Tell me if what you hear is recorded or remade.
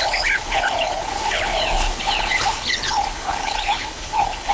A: remade